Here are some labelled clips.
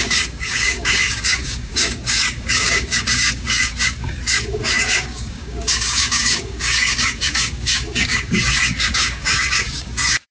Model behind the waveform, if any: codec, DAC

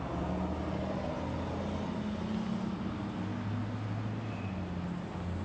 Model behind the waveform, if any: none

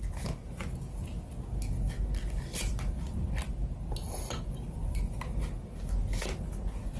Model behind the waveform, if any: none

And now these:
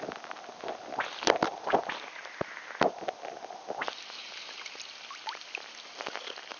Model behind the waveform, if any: none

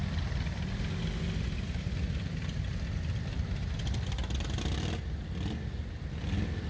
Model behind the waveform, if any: none